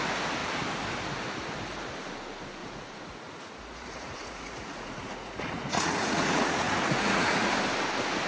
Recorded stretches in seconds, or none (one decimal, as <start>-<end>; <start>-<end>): 0.0-2.6; 7.5-8.3